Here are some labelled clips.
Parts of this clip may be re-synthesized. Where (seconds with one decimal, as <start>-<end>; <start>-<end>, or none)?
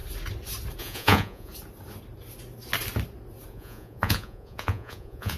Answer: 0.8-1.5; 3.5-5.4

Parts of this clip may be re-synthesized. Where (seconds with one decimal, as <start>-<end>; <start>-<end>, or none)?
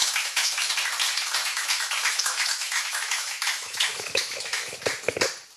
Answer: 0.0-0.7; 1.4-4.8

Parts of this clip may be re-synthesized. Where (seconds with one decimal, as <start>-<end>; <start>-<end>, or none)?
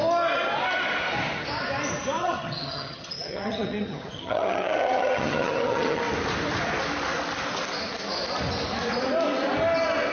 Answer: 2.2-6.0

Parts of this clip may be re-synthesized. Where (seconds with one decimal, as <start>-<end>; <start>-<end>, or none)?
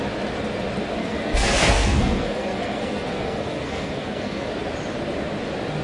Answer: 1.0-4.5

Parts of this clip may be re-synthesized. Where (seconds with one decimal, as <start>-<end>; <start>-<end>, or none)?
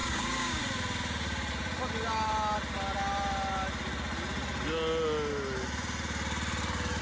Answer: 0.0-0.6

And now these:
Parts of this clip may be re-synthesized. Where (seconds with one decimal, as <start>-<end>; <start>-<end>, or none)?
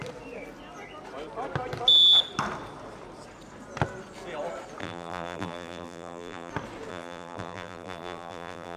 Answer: 4.8-6.5; 6.9-8.8